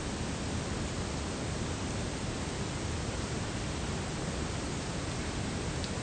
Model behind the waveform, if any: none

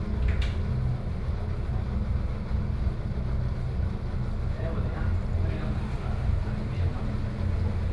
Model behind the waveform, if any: none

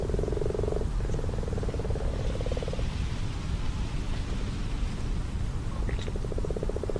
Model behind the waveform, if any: vocoder, BigVGAN v2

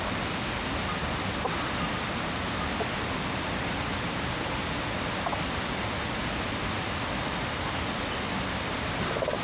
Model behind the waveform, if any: none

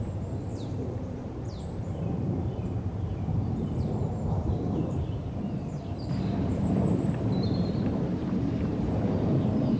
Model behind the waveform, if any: vocoder, BigVGAN v2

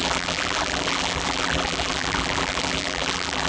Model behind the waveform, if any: vocoder, BigVGAN v2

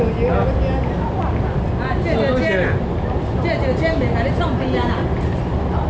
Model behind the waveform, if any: none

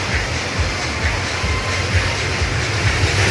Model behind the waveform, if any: none